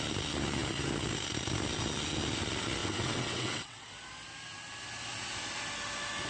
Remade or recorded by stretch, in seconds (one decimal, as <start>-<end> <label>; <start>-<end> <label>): 0.0-2.8 recorded; 2.8-3.9 remade; 3.9-6.3 recorded